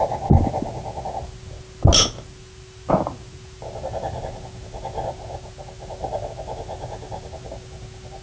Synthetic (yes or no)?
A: no